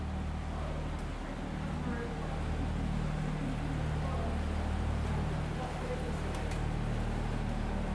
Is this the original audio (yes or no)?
yes